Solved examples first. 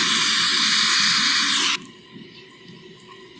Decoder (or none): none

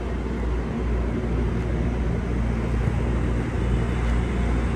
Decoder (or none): none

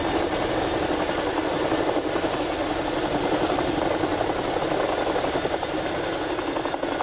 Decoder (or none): none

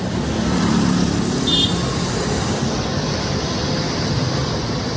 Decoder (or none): vocoder, BigVGAN v2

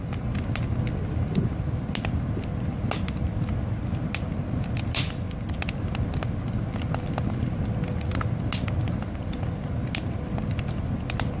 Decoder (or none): none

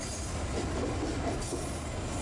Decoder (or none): none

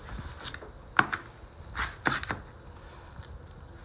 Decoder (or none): none